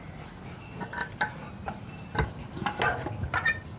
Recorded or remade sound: recorded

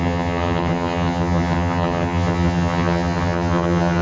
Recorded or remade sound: remade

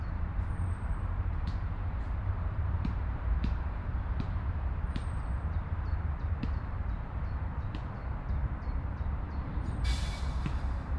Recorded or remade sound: remade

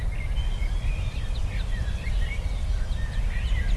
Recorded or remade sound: recorded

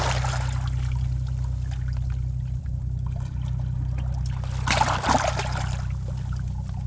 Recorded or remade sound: recorded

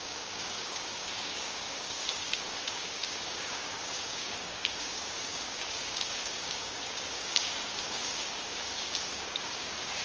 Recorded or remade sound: remade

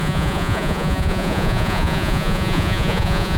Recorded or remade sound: remade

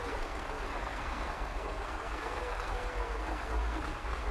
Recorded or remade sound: remade